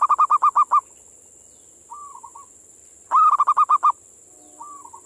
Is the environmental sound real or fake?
real